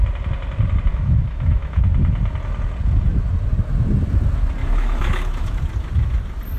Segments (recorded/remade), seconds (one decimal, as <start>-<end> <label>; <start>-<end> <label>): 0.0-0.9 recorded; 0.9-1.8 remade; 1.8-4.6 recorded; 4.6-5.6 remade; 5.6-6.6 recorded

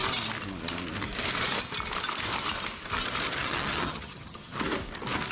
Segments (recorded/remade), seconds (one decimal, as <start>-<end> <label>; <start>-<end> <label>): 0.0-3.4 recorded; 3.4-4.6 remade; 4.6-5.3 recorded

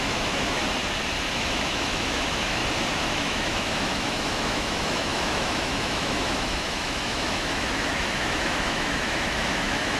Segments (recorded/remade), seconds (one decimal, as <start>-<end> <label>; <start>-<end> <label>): 0.0-0.6 remade; 0.6-1.3 recorded; 1.3-2.6 remade; 2.6-3.1 recorded; 3.1-10.0 remade